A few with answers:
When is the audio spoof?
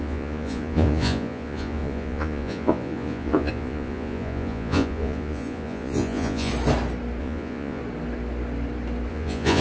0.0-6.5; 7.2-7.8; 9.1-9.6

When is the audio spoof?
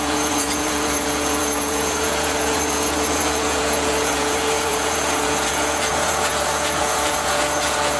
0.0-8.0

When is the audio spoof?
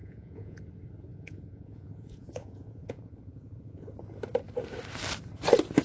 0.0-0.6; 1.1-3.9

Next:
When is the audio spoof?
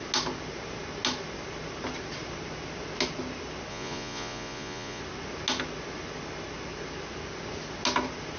3.7-5.0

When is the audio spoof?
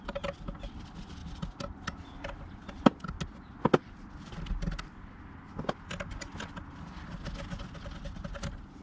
none